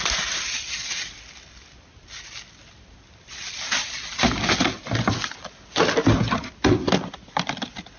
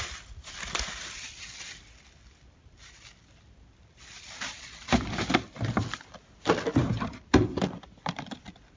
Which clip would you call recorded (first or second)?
first